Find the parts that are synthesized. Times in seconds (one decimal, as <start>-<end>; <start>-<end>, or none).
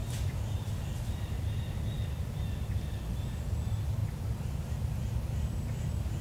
0.0-1.4; 4.0-4.7